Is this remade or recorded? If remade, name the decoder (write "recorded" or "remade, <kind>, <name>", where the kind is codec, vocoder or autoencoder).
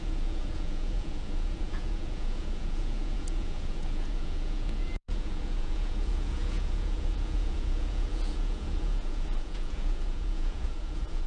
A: remade, vocoder, Vocos